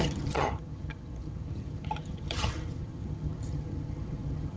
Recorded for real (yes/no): no